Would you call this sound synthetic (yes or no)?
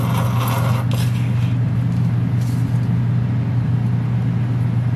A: no